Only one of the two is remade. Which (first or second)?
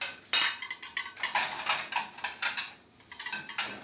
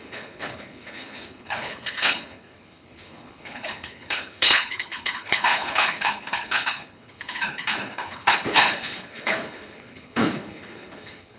second